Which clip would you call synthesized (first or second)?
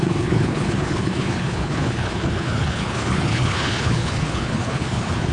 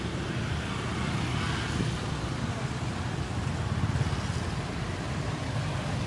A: first